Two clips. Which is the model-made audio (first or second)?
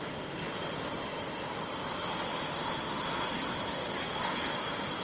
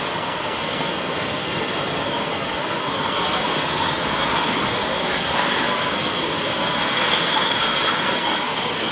second